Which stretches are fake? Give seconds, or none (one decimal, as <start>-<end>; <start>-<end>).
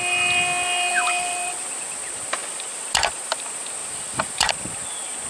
0.9-1.5; 2.4-3.4; 3.8-4.5